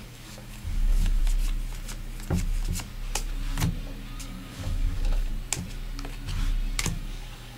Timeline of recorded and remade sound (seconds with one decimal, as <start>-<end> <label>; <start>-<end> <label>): 0.0-1.2 remade; 1.2-4.2 recorded; 4.2-5.3 remade; 5.3-6.8 recorded; 6.8-7.6 remade